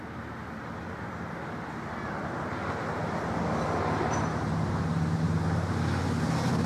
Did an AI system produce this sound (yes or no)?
no